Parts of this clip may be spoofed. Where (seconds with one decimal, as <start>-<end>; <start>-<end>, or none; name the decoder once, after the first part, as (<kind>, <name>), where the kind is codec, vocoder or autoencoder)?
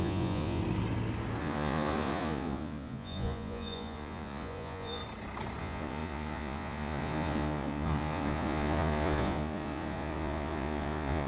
0.0-0.6 (vocoder, Vocos); 1.4-5.0; 5.6-11.3